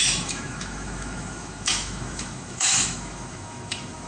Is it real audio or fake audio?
fake